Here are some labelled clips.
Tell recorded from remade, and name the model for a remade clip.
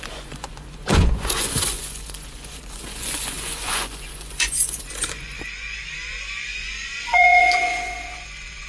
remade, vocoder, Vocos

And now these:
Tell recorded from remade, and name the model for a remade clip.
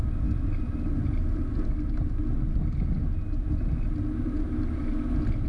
recorded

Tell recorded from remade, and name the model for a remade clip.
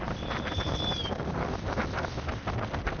recorded